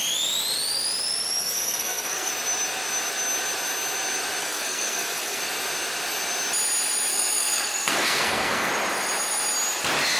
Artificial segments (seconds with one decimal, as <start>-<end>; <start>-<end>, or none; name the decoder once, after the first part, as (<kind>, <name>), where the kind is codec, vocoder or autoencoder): 1.4-2.3 (codec, SNAC); 4.4-5.4; 7.1-8.7